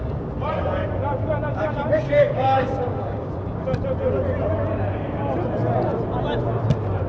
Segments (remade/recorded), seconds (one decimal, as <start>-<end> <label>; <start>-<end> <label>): 0.0-2.2 recorded; 2.2-3.4 remade; 3.4-7.1 recorded